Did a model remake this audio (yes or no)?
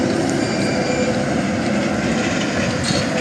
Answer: no